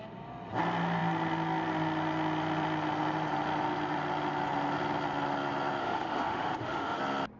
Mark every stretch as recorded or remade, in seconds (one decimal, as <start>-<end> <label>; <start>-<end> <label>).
0.0-5.8 recorded; 5.8-7.0 remade; 7.0-7.4 recorded